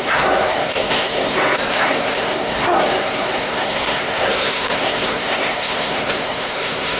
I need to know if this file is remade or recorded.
remade